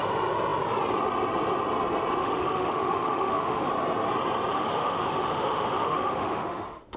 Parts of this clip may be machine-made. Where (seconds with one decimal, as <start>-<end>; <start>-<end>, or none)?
2.2-3.7; 4.5-7.0